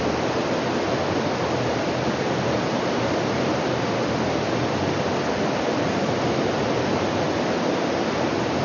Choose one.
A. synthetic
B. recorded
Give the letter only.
A